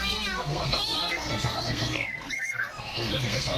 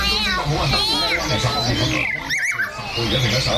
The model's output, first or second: first